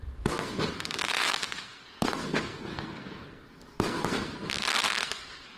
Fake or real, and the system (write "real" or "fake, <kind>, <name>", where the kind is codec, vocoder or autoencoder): fake, codec, SNAC